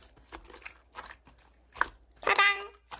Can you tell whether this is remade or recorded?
recorded